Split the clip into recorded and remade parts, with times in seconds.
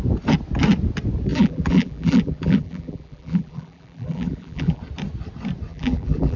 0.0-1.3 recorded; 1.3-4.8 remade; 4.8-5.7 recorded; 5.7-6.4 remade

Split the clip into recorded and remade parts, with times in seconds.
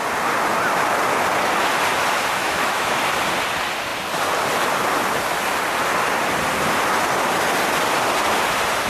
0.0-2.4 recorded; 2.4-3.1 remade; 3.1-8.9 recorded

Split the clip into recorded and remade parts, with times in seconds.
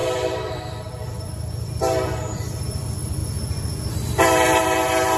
0.0-3.2 remade; 3.2-3.9 recorded; 3.9-5.2 remade